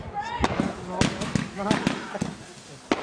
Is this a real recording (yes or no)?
yes